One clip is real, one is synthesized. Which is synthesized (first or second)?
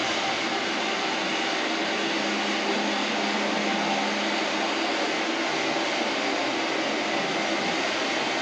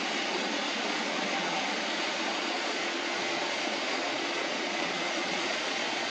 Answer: second